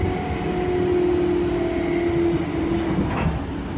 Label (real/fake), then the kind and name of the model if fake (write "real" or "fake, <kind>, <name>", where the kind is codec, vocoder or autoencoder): real